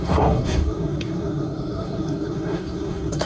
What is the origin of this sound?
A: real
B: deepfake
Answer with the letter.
B